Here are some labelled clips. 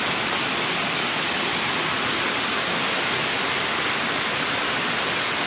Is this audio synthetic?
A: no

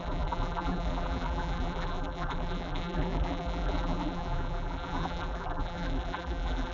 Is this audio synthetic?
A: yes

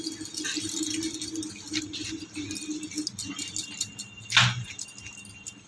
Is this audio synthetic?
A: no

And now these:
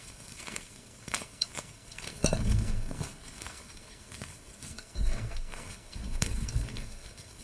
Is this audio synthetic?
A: yes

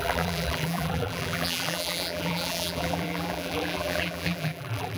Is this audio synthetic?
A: yes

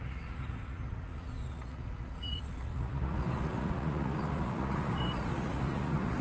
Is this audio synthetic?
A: yes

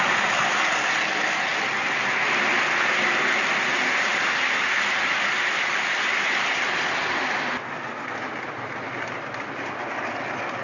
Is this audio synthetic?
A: no